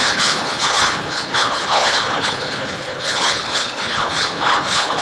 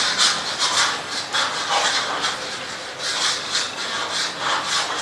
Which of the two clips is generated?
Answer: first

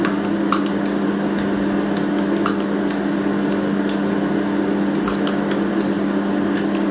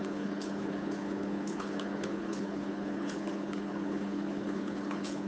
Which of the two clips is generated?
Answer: second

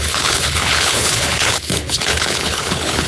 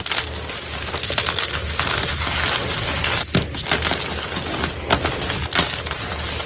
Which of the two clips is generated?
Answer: first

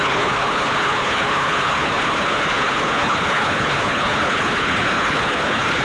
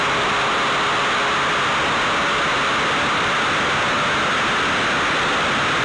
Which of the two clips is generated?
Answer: first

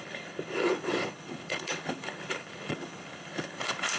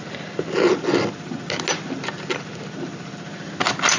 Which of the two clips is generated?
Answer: first